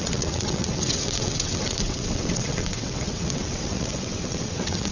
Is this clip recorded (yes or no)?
no